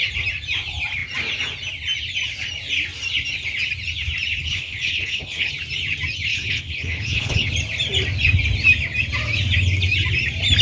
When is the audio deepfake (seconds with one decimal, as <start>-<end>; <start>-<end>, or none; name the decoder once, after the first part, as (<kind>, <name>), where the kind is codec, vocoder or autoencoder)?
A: 4.4-5.5 (codec, HILCodec); 6.3-7.5